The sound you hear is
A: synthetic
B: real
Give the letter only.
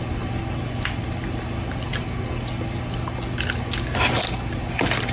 B